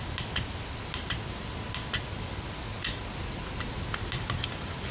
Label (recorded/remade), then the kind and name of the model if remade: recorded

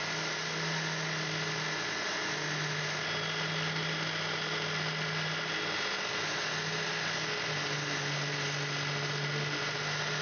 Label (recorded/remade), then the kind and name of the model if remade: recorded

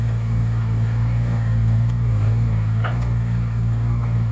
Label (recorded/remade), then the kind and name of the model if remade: remade, codec, DAC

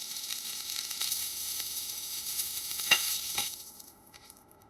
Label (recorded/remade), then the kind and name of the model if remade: remade, autoencoder, DAC-VAE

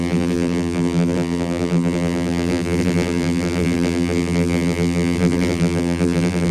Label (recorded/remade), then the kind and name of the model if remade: remade, vocoder, BigVGAN v2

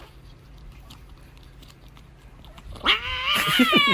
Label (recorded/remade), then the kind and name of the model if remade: recorded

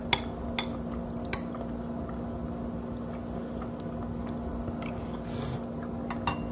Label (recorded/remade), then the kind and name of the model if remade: recorded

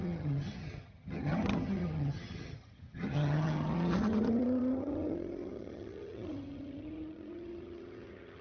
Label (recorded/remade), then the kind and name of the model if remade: remade, vocoder, HiFi-GAN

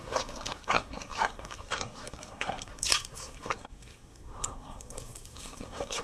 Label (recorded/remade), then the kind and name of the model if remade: remade, codec, SNAC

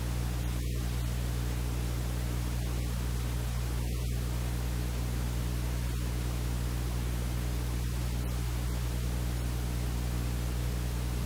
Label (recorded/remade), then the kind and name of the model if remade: recorded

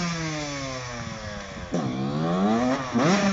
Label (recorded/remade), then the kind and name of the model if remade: recorded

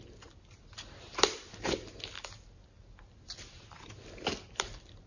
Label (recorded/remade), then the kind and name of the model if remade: recorded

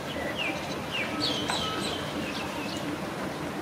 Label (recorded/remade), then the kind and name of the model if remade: recorded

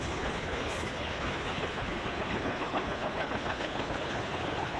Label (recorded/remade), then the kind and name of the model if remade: remade, codec, HILCodec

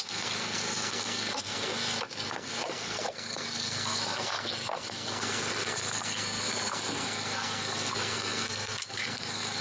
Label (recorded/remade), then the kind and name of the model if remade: remade, codec, SNAC